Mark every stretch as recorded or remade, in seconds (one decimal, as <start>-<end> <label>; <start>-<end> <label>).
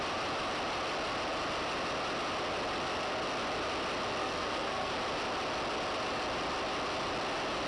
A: 0.0-4.2 recorded; 4.2-4.9 remade; 4.9-7.7 recorded